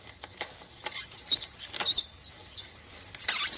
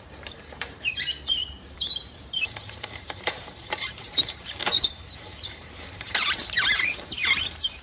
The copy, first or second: second